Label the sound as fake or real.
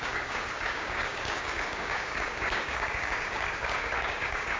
fake